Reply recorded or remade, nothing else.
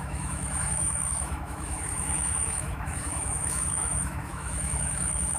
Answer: remade